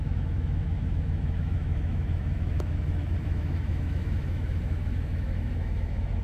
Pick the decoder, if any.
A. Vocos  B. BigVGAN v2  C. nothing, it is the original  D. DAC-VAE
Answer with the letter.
D